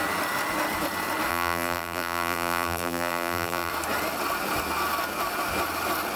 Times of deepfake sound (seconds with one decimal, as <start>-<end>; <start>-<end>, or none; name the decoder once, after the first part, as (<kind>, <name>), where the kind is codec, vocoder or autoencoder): 1.3-3.7 (vocoder, BigVGAN v2)